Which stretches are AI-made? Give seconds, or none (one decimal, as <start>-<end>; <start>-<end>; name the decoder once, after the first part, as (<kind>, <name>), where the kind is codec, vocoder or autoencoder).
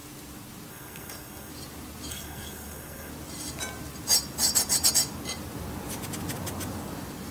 0.7-1.5 (codec, SNAC); 2.1-3.1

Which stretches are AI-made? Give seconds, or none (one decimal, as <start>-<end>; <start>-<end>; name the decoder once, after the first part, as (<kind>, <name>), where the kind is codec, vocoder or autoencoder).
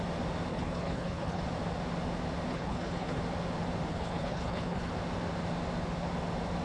0.5-1.4 (codec, HILCodec); 2.5-3.2; 3.9-4.9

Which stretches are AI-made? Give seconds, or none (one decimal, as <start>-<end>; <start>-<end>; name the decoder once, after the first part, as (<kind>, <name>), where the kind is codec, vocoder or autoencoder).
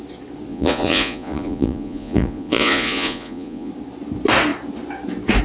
0.5-3.7 (vocoder, Vocos)